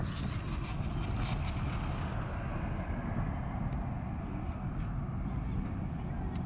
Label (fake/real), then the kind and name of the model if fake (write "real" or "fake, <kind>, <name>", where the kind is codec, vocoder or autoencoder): real